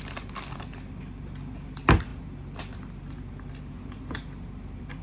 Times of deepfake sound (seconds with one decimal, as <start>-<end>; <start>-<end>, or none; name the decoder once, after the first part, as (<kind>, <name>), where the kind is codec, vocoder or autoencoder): none